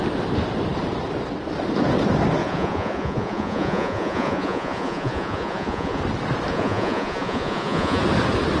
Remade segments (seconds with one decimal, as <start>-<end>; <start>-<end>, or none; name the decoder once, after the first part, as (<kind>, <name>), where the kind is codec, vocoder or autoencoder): 2.4-6.0 (vocoder, Vocos); 6.5-8.0